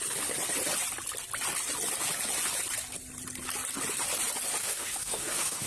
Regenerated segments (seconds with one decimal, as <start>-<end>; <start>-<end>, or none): 4.6-5.7

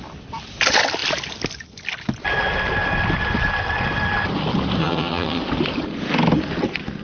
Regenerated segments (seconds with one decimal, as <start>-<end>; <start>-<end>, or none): 4.8-5.4

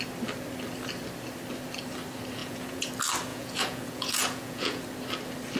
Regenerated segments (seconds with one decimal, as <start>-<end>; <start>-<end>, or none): 2.4-2.9; 3.3-4.8

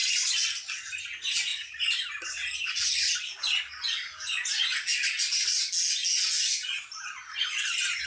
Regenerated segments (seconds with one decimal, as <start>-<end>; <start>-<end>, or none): 0.0-1.0; 1.5-3.7; 4.9-5.6